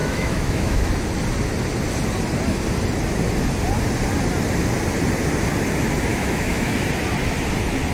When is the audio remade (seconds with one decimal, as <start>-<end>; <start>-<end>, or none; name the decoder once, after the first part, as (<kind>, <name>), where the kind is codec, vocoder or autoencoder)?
0.0-0.9 (autoencoder, DAC-VAE); 6.1-6.7